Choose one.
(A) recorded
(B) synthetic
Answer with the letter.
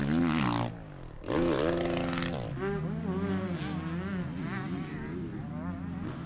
A